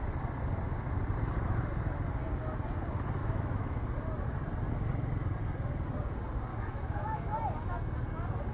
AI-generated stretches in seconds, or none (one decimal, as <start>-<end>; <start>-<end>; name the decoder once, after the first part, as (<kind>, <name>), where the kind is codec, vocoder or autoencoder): 3.2-3.8 (autoencoder, DAC-VAE); 6.5-7.3